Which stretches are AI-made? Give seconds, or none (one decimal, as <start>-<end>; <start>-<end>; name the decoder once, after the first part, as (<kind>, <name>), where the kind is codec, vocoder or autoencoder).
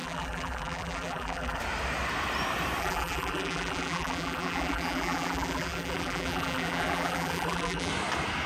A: 0.0-1.6 (vocoder, BigVGAN v2); 2.8-7.9